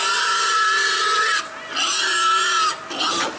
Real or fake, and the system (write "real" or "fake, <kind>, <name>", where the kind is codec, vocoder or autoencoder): real